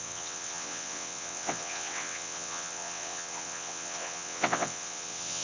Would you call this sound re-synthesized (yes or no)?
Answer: yes